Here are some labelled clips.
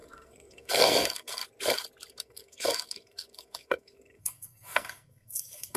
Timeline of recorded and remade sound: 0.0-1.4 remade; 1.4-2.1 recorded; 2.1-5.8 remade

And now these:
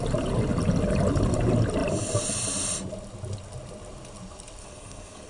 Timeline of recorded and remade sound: 0.0-4.6 recorded; 4.6-5.3 remade

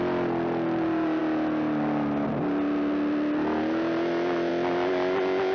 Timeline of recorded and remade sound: 0.0-5.5 recorded

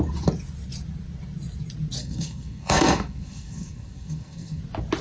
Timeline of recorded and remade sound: 0.0-2.0 recorded; 2.0-4.6 remade; 4.6-5.0 recorded

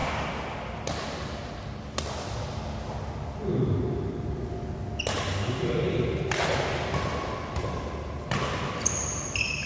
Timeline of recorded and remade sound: 0.0-9.7 recorded

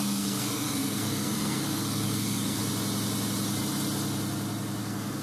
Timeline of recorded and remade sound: 0.0-2.6 remade; 2.6-4.8 recorded; 4.8-5.2 remade

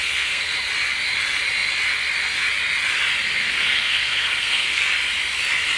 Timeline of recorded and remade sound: 0.0-0.5 remade; 0.5-3.4 recorded; 3.4-4.8 remade; 4.8-5.8 recorded

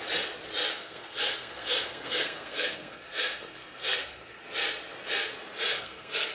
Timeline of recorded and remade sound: 0.0-0.7 recorded; 0.7-4.4 remade; 4.4-5.7 recorded; 5.7-6.3 remade